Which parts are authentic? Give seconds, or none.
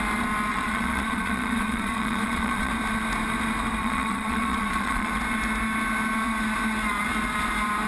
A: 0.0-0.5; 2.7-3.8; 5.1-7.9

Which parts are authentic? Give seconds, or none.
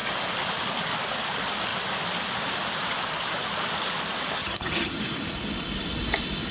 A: 0.0-4.4; 5.0-6.5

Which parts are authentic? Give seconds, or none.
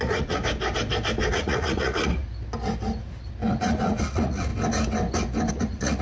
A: 0.4-1.3; 2.2-3.6; 4.5-5.5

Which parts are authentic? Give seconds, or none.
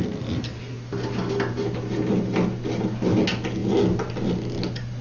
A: 0.0-5.0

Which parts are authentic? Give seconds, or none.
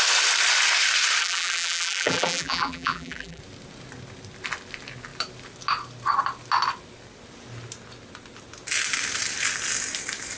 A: 0.0-1.2; 3.4-10.4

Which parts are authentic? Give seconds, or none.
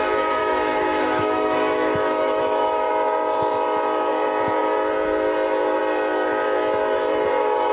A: 0.0-0.4; 2.9-7.7